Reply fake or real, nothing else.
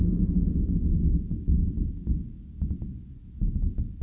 real